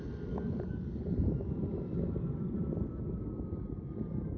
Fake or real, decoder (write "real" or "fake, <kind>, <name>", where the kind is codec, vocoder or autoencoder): real